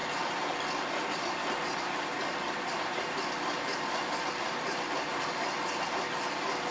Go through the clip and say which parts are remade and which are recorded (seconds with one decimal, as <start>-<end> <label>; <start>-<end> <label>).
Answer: 0.0-6.7 recorded